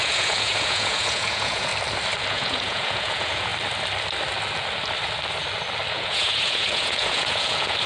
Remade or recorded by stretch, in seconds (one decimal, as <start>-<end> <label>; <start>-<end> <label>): 0.0-1.7 remade; 1.7-2.3 recorded; 2.3-3.5 remade; 3.5-5.9 recorded; 5.9-7.9 remade